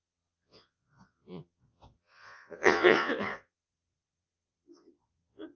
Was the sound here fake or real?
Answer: fake